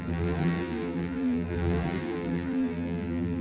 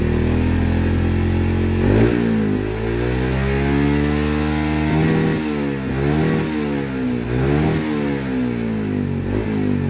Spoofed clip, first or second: first